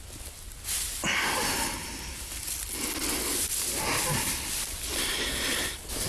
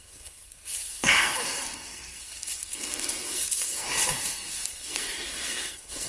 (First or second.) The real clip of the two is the first